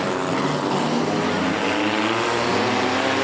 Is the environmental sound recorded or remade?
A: recorded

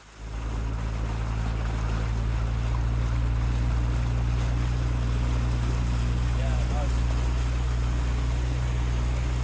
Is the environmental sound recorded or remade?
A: recorded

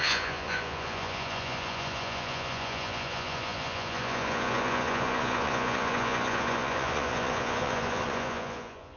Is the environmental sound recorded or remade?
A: remade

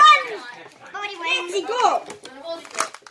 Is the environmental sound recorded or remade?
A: recorded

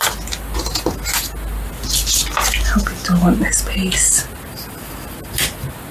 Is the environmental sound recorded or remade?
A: recorded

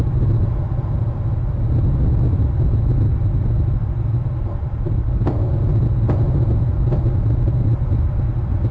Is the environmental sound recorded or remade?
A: recorded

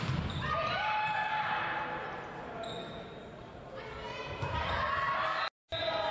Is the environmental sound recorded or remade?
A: recorded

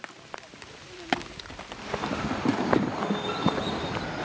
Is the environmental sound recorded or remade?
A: recorded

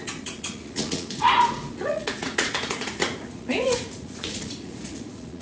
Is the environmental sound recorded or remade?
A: remade